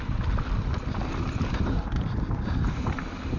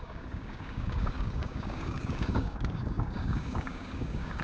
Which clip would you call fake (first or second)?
second